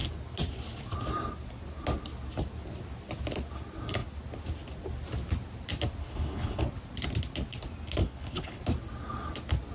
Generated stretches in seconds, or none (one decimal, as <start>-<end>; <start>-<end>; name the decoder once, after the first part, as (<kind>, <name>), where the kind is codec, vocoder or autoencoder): 6.0-6.6 (codec, HILCodec); 8.0-8.6